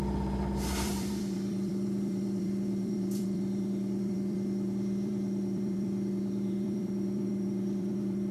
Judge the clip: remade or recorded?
remade